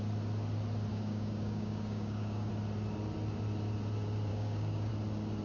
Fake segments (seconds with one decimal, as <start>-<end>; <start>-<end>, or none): 0.9-2.5; 4.3-4.9